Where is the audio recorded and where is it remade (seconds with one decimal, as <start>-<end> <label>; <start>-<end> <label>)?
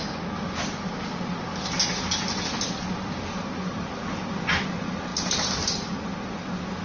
0.0-6.8 recorded